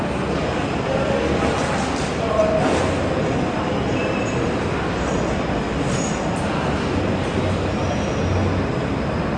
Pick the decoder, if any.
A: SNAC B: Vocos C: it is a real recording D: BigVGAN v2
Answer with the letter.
C